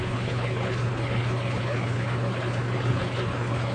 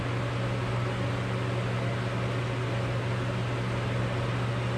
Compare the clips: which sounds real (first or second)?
second